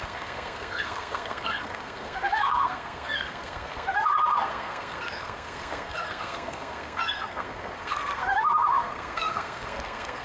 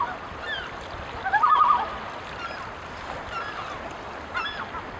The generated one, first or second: first